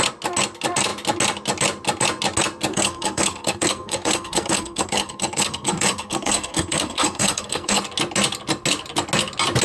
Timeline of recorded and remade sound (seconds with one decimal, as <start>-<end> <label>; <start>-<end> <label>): 0.0-2.7 recorded; 2.7-7.8 remade; 7.8-9.6 recorded